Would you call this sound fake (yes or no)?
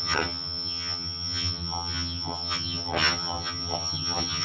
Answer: yes